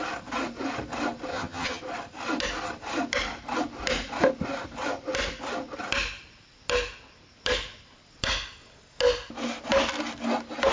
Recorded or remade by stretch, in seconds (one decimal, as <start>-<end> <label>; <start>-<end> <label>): 0.0-1.3 recorded; 1.3-1.8 remade; 1.8-10.7 recorded